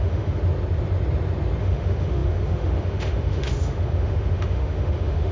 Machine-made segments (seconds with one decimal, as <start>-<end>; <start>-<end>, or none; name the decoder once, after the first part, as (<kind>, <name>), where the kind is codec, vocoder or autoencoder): 0.0-0.4 (autoencoder, DAC-VAE); 1.6-5.3